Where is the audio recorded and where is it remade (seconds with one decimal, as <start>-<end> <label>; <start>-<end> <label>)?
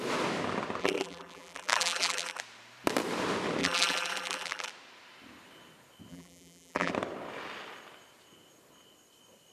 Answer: 0.0-0.8 recorded; 0.8-2.4 remade; 2.4-3.6 recorded; 3.6-4.7 remade; 4.7-6.1 recorded; 6.1-6.9 remade; 6.9-9.5 recorded